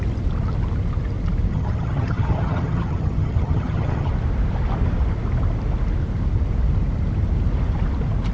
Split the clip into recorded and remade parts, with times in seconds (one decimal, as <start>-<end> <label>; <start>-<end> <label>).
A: 0.0-1.5 recorded; 1.5-4.1 remade; 4.1-8.3 recorded

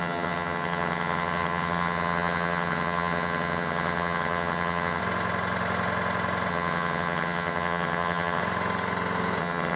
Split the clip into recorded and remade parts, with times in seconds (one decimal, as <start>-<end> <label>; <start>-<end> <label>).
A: 0.0-5.0 remade; 5.0-6.5 recorded; 6.5-8.4 remade; 8.4-9.4 recorded; 9.4-9.8 remade

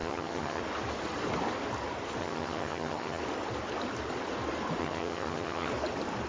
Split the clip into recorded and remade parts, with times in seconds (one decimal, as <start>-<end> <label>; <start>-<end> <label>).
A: 0.0-0.6 remade; 0.6-2.2 recorded; 2.2-3.2 remade; 3.2-4.8 recorded; 4.8-5.7 remade; 5.7-6.3 recorded

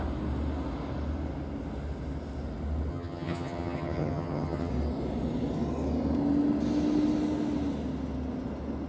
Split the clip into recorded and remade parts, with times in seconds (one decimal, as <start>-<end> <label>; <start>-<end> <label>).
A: 0.0-2.9 recorded; 2.9-4.7 remade; 4.7-8.9 recorded

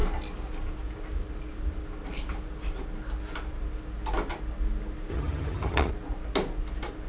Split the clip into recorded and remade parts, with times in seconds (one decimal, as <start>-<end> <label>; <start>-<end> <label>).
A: 0.0-5.1 recorded; 5.1-5.9 remade; 5.9-7.1 recorded

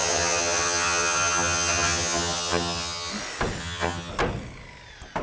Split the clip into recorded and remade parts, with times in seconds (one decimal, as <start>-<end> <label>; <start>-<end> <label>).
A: 0.0-3.1 remade; 3.1-3.6 recorded; 3.6-4.1 remade; 4.1-5.2 recorded